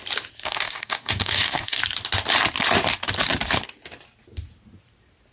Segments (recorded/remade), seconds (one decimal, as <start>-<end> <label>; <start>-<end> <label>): 0.0-0.4 recorded; 0.4-1.8 remade; 1.8-5.3 recorded